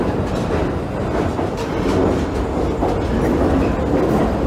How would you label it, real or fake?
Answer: real